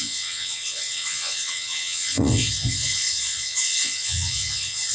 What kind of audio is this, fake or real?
fake